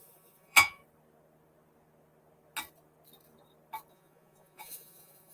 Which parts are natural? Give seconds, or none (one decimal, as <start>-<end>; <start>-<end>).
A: 0.8-3.9